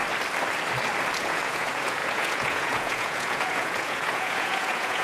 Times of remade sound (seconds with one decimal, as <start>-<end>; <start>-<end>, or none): 1.2-5.0